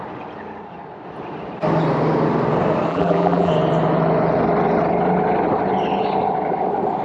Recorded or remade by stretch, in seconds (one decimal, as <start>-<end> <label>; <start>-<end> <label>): 0.0-2.9 recorded; 2.9-3.5 remade; 3.5-7.0 recorded